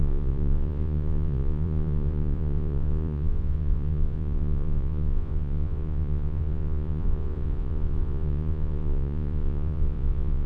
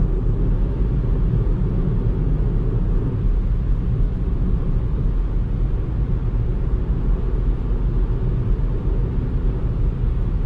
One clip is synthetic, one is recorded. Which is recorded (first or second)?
second